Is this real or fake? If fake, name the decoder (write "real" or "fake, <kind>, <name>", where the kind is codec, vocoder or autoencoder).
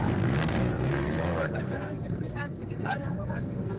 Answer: fake, codec, SNAC